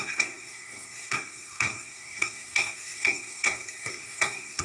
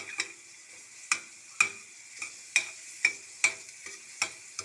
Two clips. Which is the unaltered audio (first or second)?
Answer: second